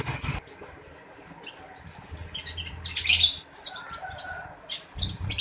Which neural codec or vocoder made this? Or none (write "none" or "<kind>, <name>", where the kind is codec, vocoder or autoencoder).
none